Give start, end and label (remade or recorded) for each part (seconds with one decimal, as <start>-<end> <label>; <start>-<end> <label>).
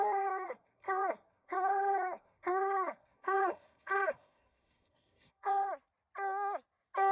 0.0-5.7 remade; 5.7-7.1 recorded